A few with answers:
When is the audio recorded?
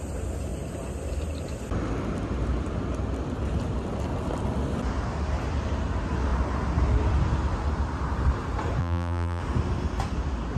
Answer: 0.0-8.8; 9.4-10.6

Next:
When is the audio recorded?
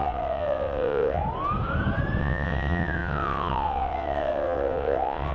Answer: 1.2-2.2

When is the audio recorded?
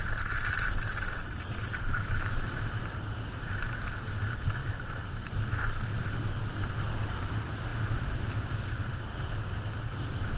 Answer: 0.0-1.6; 2.5-4.6; 5.3-5.9; 6.5-10.4